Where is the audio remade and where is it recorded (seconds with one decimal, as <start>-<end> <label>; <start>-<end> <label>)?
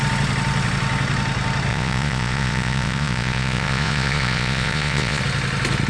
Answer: 0.0-1.7 recorded; 1.7-5.2 remade; 5.2-5.9 recorded